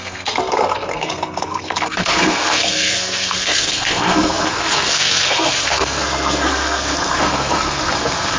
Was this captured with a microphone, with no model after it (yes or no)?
no